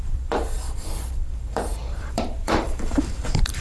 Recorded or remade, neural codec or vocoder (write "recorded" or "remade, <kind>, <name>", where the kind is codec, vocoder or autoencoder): remade, vocoder, BigVGAN v2